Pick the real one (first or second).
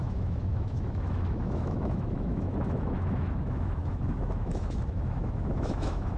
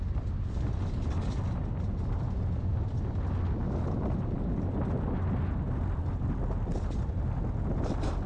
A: second